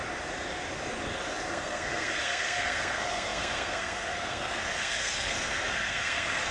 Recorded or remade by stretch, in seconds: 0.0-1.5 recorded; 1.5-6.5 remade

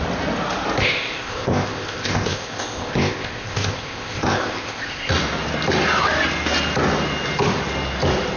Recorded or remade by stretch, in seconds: 0.0-0.8 recorded; 0.8-5.1 remade; 5.1-8.4 recorded

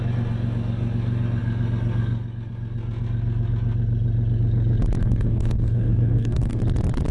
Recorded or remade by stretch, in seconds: 0.0-5.0 recorded; 5.0-6.6 remade; 6.6-7.1 recorded

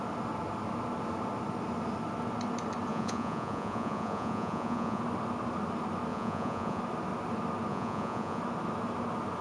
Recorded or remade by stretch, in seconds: 0.0-2.9 recorded; 2.9-5.0 remade; 5.0-6.1 recorded; 6.1-6.8 remade; 6.8-7.7 recorded; 7.7-8.4 remade; 8.4-9.4 recorded

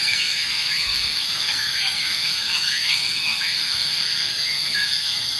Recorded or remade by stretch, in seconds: 0.0-5.4 remade